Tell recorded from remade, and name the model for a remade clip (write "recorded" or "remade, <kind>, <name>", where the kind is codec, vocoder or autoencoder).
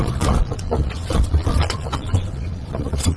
remade, vocoder, Vocos